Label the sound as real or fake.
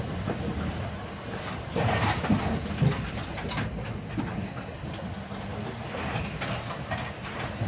real